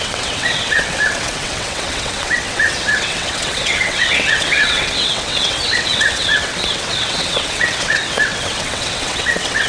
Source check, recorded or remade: remade